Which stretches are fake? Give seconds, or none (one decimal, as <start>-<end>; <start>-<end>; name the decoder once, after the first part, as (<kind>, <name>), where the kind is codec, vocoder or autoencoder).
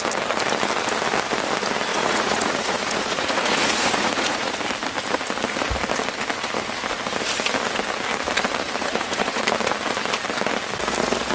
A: 1.9-4.5 (vocoder, Vocos); 8.8-9.4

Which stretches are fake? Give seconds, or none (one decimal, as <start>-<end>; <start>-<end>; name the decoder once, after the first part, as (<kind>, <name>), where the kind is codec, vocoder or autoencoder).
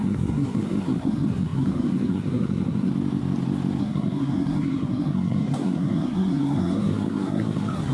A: 0.0-2.9 (codec, SNAC); 3.8-7.9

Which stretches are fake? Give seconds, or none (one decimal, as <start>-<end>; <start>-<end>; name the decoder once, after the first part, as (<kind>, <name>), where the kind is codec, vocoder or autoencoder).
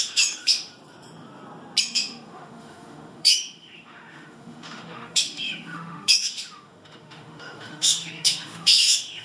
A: 0.0-0.7 (autoencoder, DAC-VAE); 1.8-9.2